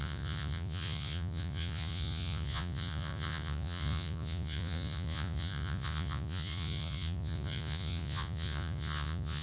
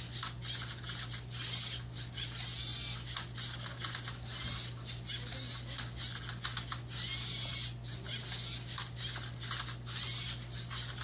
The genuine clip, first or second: second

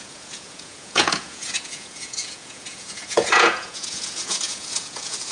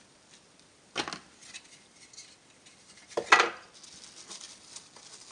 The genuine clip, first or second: second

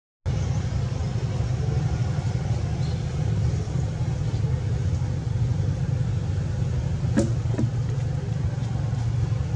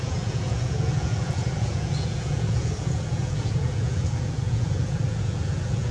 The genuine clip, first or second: first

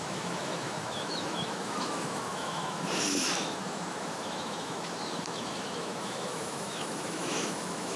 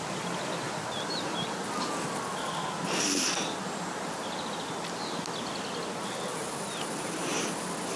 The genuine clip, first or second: second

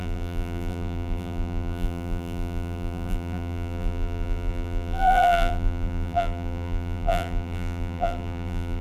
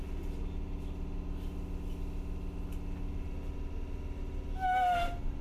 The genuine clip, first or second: second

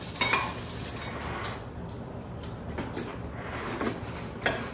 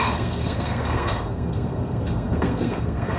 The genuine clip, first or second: first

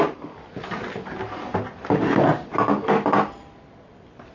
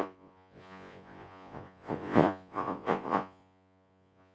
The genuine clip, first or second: first